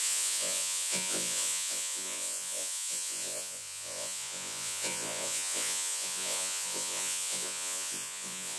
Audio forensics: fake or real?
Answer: fake